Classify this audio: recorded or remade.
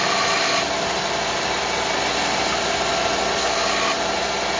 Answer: recorded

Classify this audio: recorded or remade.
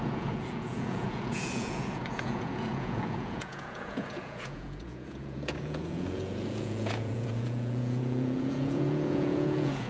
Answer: remade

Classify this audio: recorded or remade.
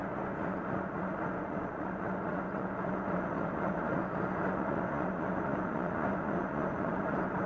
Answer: remade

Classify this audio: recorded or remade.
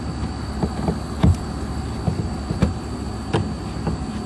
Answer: recorded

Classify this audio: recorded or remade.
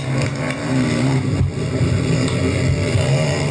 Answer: recorded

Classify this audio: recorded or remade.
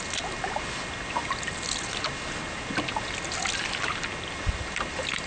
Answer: recorded